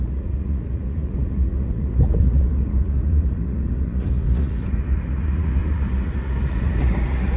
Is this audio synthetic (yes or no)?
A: yes